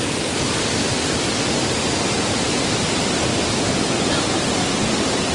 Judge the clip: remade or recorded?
recorded